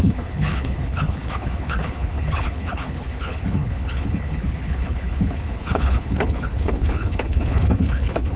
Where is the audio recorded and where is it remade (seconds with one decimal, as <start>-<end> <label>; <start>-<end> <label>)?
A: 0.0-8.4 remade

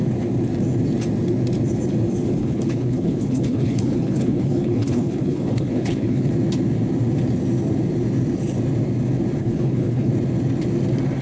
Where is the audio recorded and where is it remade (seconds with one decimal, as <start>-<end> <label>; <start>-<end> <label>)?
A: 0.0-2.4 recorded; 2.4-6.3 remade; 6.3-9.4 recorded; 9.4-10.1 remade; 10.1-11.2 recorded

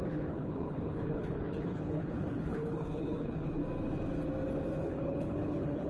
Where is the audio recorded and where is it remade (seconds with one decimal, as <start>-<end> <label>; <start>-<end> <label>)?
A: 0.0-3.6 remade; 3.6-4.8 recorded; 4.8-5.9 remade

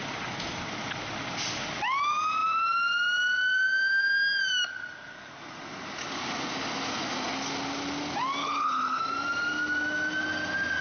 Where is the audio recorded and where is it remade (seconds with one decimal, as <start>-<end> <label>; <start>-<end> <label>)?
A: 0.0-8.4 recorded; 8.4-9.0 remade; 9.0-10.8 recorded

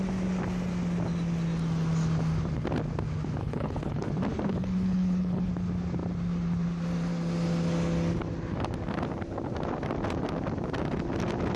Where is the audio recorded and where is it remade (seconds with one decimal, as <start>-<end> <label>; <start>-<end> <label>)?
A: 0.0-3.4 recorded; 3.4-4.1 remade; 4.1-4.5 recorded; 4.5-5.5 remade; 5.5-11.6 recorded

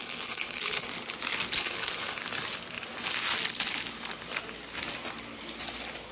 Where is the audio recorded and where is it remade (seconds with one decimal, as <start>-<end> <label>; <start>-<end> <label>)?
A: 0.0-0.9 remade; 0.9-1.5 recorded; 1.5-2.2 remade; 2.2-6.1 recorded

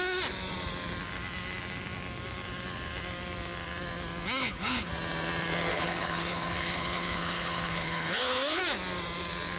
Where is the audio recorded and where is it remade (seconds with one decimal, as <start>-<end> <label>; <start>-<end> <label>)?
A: 0.0-4.4 recorded; 4.4-4.9 remade; 4.9-5.7 recorded; 5.7-8.6 remade; 8.6-9.6 recorded

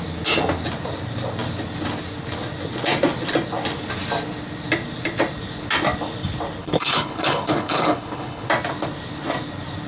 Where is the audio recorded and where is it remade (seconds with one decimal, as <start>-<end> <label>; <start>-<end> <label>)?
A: 0.0-6.6 recorded; 6.6-8.5 remade; 8.5-9.9 recorded